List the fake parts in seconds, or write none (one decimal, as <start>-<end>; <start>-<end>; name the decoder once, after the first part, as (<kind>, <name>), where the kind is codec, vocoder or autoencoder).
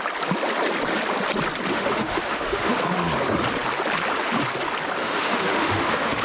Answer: 1.7-2.8 (autoencoder, DAC-VAE); 5.0-6.2